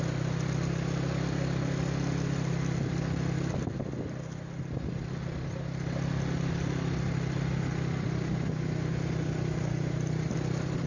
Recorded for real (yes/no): yes